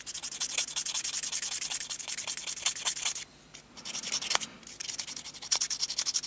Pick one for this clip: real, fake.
real